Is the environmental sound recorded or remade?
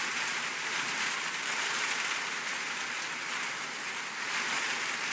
recorded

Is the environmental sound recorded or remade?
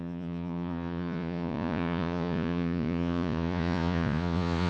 remade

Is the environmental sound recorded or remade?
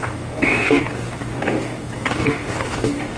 remade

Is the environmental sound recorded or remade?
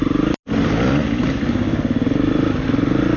recorded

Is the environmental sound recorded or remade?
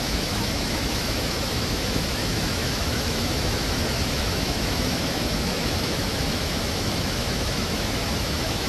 remade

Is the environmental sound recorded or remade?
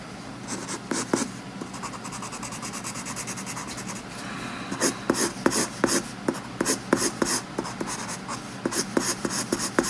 recorded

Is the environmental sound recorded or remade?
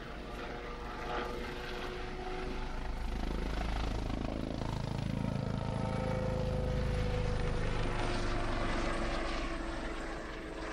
recorded